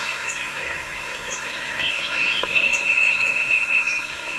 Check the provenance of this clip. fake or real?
fake